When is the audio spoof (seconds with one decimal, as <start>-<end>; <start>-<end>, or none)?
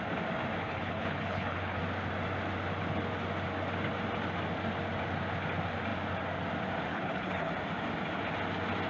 0.6-1.8; 6.9-7.5